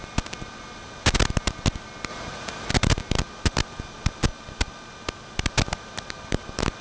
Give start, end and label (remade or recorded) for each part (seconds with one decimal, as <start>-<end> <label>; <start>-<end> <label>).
0.0-2.1 recorded; 2.1-2.7 remade; 2.7-6.8 recorded